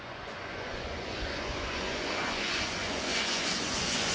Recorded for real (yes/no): no